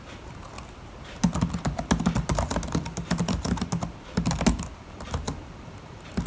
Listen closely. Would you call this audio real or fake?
real